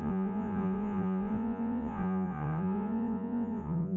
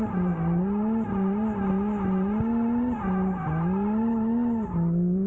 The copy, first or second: first